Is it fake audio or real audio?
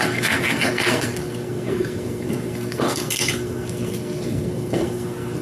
fake